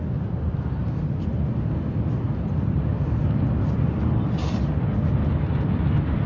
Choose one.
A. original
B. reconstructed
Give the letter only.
A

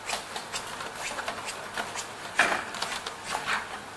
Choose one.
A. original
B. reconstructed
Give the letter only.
A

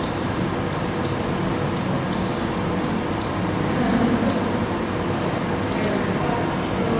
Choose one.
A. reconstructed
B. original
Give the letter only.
B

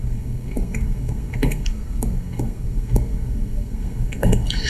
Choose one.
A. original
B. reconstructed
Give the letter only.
B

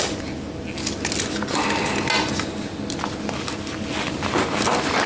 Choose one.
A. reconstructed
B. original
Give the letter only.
B